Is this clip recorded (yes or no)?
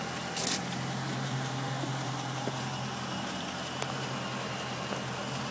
yes